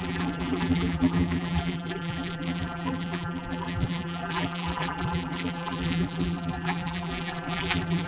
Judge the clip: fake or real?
fake